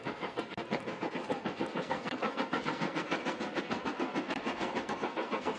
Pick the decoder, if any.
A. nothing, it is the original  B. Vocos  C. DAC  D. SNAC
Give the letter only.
D